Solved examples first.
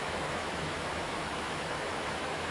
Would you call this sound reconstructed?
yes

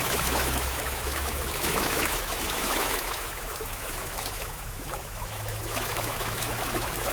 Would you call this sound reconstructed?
yes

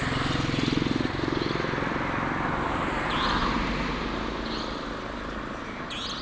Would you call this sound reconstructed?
no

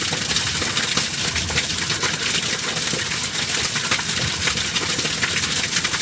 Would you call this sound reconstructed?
no